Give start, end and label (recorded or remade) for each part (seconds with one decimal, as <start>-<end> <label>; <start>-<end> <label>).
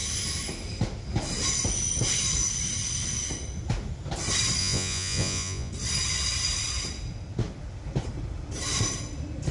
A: 0.0-4.6 recorded; 4.6-5.7 remade; 5.7-9.5 recorded